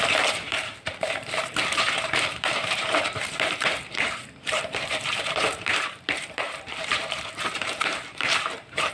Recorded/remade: remade